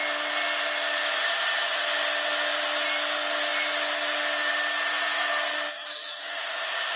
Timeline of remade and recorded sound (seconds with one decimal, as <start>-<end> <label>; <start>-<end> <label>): 0.0-5.5 recorded; 5.5-7.0 remade